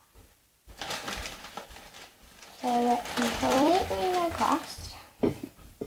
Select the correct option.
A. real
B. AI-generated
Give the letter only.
B